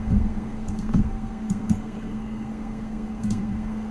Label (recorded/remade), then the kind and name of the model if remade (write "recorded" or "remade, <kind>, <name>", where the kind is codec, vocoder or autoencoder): remade, codec, SNAC